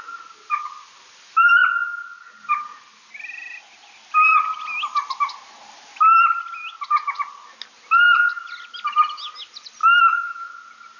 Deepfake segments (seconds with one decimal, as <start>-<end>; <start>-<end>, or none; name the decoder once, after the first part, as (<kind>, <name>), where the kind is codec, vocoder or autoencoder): 9.8-10.5 (autoencoder, DAC-VAE)